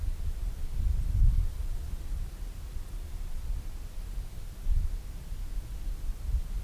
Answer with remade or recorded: recorded